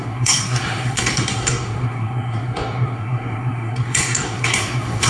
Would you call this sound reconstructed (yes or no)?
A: yes